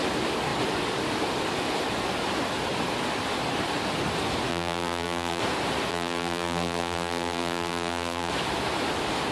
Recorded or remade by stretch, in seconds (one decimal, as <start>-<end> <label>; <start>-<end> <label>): 0.0-4.5 recorded; 4.5-5.4 remade; 5.4-5.9 recorded; 5.9-8.3 remade; 8.3-9.3 recorded